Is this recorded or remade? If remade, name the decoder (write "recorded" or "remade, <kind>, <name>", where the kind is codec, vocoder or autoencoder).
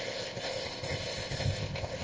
remade, codec, ZipCodec